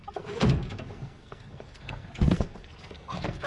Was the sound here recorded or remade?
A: remade